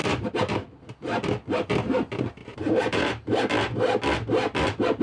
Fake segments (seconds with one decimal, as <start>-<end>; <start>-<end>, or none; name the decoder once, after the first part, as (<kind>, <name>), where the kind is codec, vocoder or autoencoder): 0.0-0.7 (vocoder, BigVGAN v2); 2.4-3.5